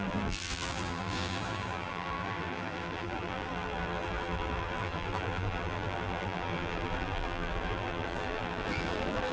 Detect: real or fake fake